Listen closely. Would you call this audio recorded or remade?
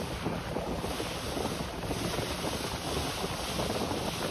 recorded